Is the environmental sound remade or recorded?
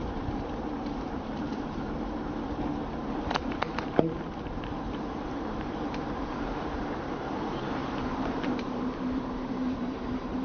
remade